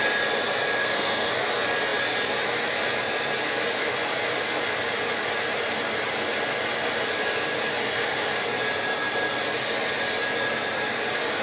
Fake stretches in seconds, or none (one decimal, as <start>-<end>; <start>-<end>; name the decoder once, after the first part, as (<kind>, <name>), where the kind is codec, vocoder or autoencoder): 0.8-1.3 (codec, SNAC)